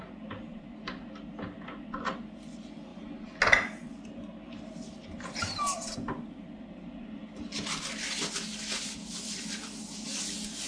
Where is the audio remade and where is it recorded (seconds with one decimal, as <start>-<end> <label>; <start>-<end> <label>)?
0.0-10.7 recorded